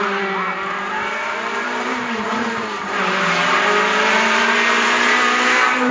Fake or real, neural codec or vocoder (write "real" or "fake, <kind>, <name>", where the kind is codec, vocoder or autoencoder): fake, vocoder, BigVGAN v2